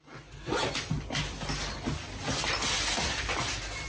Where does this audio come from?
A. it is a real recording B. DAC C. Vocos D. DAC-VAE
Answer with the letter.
A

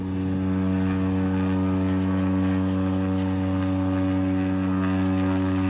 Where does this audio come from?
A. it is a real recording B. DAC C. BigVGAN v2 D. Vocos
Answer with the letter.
A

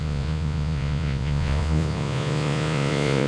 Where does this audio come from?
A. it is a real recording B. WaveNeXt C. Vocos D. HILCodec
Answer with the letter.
C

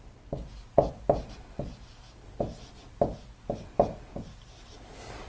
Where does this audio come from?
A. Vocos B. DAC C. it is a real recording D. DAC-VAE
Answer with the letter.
C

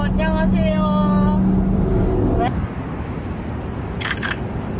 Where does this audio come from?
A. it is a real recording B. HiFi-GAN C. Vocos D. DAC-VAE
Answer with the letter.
A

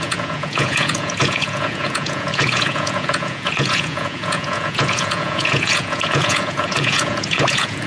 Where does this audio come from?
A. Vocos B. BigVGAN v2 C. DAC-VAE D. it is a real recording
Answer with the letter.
A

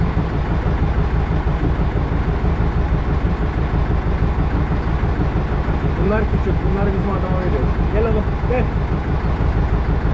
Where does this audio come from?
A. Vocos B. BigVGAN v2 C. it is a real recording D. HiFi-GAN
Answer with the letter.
C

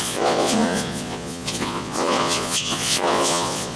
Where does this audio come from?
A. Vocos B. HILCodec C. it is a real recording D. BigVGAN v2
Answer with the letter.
A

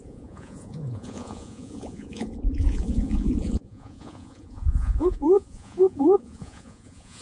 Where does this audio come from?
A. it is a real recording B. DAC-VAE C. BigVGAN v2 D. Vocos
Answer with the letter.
D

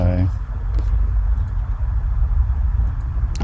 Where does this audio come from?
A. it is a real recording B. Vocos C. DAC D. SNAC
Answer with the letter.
A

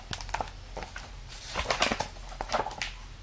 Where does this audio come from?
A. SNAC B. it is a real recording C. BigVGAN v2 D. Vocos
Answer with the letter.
B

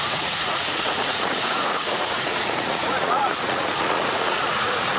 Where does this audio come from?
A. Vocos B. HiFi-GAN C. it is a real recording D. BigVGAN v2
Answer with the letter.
A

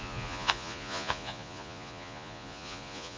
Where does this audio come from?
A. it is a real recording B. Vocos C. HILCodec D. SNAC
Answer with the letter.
B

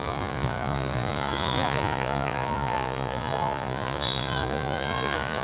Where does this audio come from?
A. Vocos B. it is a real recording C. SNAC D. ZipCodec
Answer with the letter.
A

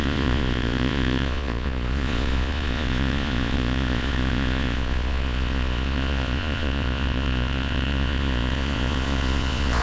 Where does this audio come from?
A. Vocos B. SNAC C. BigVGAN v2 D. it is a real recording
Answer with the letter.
A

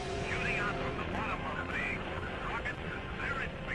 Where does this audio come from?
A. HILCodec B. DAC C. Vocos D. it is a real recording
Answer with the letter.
C